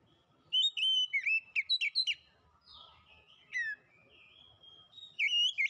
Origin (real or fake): real